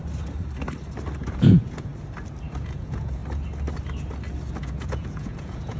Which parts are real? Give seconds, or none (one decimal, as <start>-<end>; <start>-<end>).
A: 0.0-1.2; 1.9-2.6; 3.2-4.6